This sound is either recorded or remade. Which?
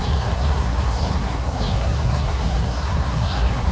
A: remade